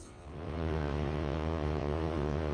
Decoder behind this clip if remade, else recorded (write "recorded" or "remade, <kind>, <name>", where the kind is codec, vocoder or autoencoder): remade, vocoder, WaveNeXt